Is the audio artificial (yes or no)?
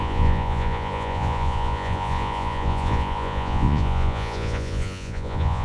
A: yes